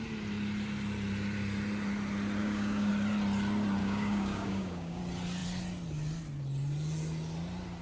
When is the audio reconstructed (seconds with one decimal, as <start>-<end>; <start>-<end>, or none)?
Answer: 2.4-2.9; 3.8-5.0

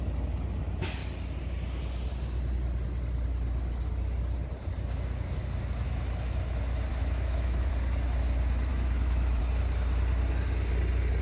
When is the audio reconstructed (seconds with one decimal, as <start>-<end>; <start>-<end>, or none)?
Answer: 6.9-7.7; 8.7-9.4

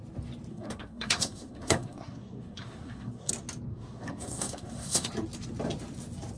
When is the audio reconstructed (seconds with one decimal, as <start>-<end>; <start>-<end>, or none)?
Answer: 0.5-3.3; 3.7-5.1